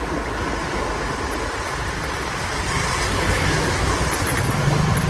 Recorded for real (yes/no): yes